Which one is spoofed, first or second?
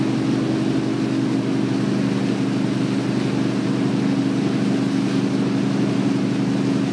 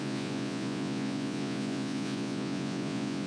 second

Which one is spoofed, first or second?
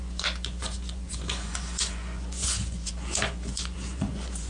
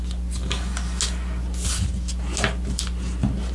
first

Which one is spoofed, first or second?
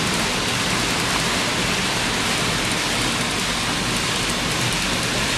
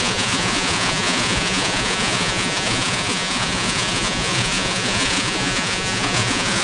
second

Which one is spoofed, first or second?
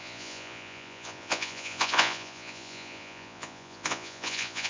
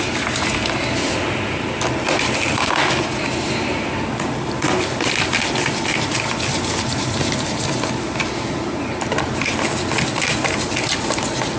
first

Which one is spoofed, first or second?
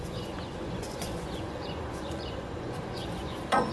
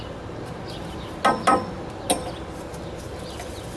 first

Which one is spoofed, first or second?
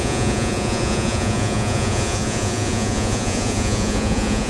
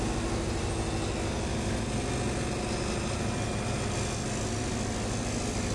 first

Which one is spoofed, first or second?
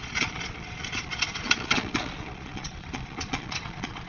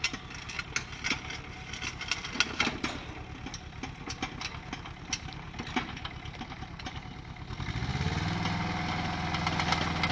first